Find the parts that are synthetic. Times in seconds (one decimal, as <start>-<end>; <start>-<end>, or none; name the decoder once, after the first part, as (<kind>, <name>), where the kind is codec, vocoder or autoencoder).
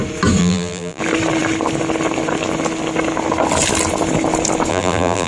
0.4-1.0 (vocoder, BigVGAN v2); 4.7-5.3